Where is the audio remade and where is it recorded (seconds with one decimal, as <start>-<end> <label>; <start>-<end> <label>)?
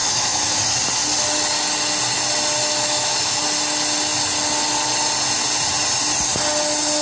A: 0.0-0.6 remade; 0.6-2.6 recorded; 2.6-3.4 remade; 3.4-7.0 recorded